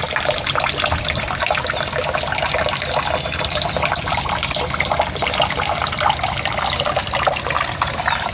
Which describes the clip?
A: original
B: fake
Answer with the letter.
A